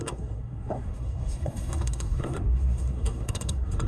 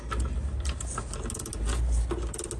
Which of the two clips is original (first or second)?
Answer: second